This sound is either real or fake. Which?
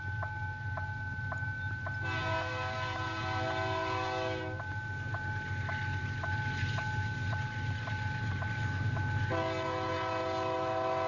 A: real